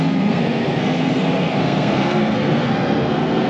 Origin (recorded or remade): remade